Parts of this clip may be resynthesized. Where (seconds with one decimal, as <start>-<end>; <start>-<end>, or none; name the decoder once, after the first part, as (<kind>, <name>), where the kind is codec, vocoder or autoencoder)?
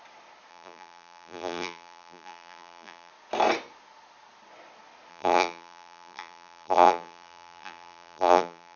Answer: 0.5-3.1 (vocoder, BigVGAN v2); 5.1-8.8